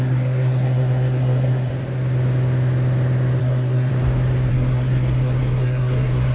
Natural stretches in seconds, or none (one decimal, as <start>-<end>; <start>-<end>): 1.7-3.4; 3.9-4.5